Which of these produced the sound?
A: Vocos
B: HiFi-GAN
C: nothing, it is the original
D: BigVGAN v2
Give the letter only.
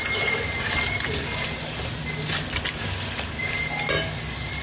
C